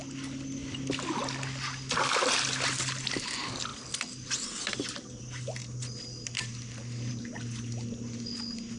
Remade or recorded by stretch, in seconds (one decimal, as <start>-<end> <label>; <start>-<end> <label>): 0.0-8.8 recorded